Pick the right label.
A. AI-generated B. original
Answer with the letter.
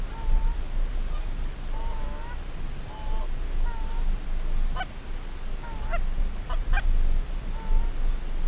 B